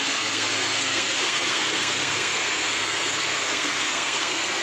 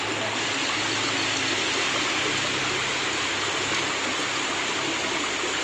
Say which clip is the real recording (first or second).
second